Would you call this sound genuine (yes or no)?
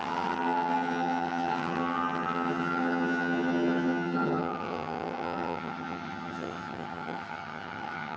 no